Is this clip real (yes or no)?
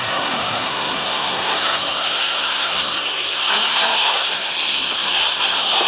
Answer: no